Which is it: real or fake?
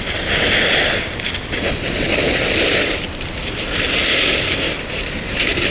fake